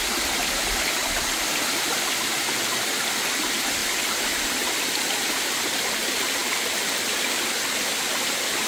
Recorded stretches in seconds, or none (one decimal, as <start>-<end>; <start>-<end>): 0.0-8.7